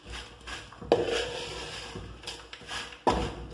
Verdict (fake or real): real